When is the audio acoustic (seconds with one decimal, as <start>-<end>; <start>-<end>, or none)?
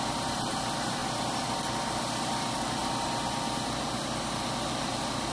1.0-2.1; 2.8-4.3